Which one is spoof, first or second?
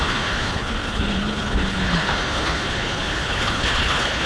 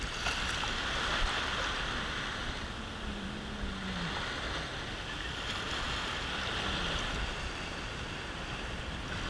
first